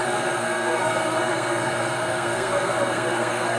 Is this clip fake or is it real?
fake